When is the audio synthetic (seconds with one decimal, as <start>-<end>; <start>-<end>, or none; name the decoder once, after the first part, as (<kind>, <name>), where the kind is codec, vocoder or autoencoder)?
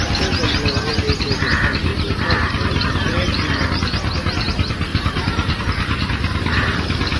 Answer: 1.9-2.8 (vocoder, BigVGAN v2)